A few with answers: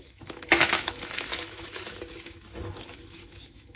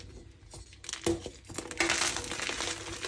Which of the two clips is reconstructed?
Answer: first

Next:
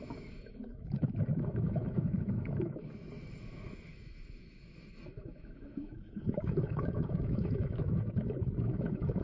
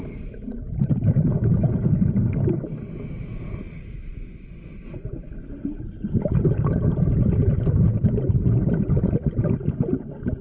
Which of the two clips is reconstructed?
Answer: first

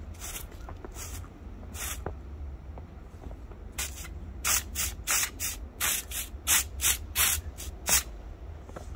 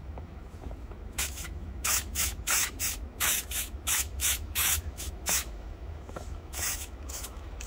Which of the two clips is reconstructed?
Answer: second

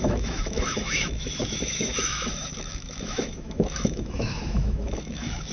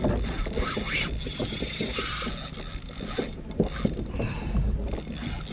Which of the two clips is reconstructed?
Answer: first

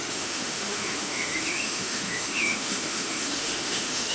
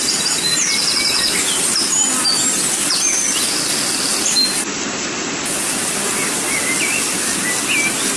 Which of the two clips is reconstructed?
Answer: first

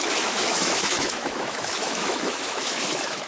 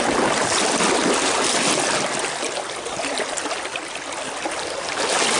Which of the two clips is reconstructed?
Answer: first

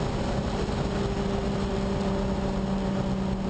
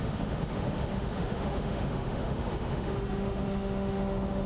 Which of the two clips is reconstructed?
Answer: second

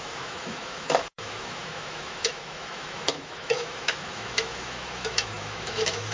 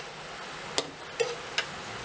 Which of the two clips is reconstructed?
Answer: first